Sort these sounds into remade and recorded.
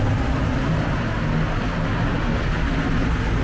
recorded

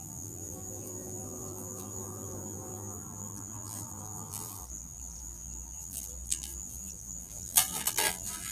remade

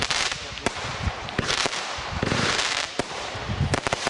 remade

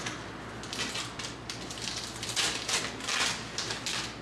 recorded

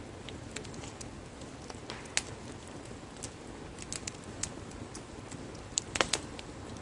recorded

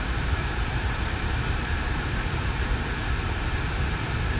remade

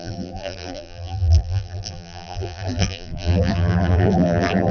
remade